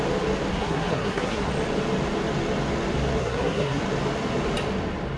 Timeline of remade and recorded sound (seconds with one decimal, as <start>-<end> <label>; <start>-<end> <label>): 0.0-0.5 recorded; 0.5-1.5 remade; 1.5-3.2 recorded; 3.2-3.8 remade; 3.8-5.2 recorded